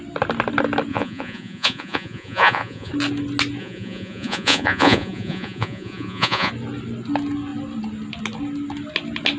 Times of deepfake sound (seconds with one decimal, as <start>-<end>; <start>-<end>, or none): 0.9-2.9; 3.6-6.5